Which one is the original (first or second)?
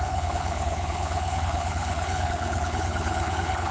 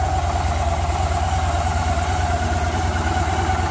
second